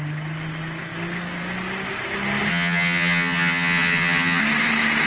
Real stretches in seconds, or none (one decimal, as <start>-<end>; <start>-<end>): 0.0-2.5; 4.4-5.1